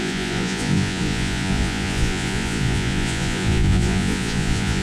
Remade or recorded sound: remade